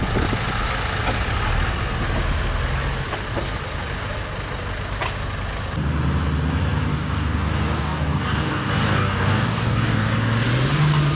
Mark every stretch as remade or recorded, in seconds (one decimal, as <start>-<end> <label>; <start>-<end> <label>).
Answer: 0.0-6.9 recorded; 6.9-10.1 remade; 10.1-11.2 recorded